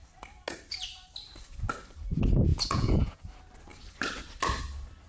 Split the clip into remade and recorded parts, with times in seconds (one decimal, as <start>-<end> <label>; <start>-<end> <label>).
0.0-2.5 recorded; 2.5-3.2 remade; 3.2-5.1 recorded